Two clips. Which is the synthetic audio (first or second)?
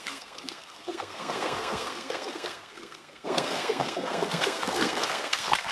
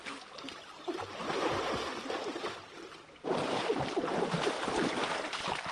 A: first